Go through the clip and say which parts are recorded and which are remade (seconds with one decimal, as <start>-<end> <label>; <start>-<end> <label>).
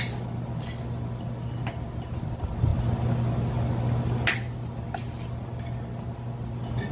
0.0-6.9 recorded